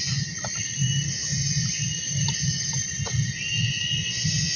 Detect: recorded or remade recorded